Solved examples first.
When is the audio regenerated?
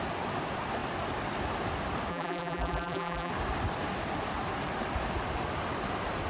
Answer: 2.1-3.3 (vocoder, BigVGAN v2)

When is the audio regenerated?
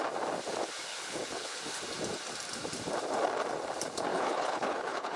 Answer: 0.9-1.6 (codec, HILCodec); 4.1-5.2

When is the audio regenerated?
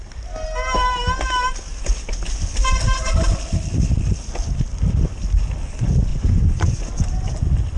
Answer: 6.1-6.9 (vocoder, Vocos)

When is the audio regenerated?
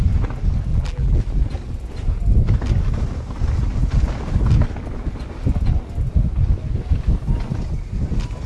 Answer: 0.7-1.2 (vocoder, BigVGAN v2)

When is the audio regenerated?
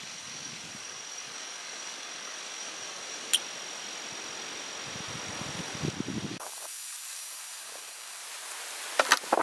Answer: 0.0-3.3 (codec, DAC); 6.3-8.2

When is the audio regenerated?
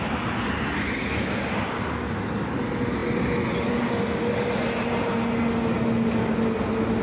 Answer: none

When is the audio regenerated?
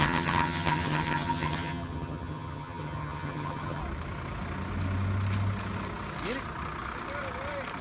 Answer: 0.0-3.8 (vocoder, HiFi-GAN)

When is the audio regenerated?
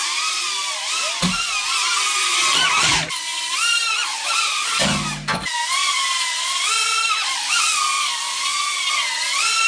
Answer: 0.0-0.8 (vocoder, BigVGAN v2)